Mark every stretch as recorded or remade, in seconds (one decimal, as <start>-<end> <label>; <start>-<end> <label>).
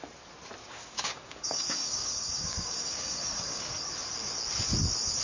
0.0-0.6 recorded; 0.6-3.7 remade; 3.7-5.2 recorded